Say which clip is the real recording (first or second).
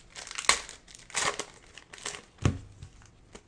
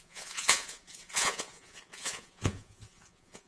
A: first